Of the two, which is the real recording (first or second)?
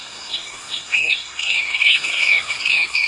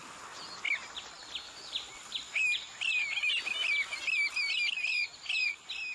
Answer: second